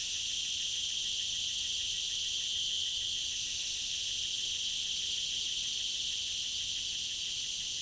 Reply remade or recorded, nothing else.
recorded